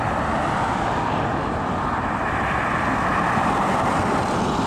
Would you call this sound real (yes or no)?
yes